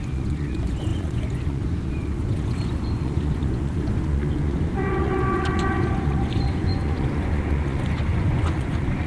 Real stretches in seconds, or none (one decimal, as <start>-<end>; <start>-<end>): none